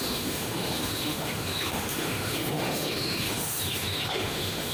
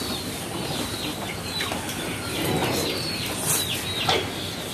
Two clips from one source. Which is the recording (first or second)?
second